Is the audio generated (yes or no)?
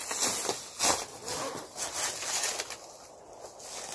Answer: no